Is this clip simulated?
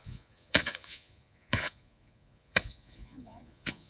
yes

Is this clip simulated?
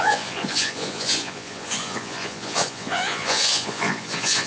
yes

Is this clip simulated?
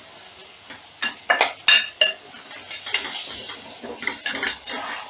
no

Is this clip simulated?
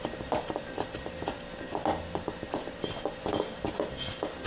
no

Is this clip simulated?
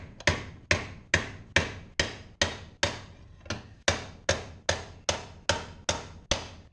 no